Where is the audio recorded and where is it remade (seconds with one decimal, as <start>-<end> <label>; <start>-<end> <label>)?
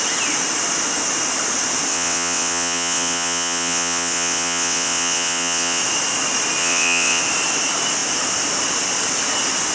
0.0-1.9 recorded; 1.9-5.8 remade; 5.8-6.6 recorded; 6.6-7.2 remade; 7.2-9.7 recorded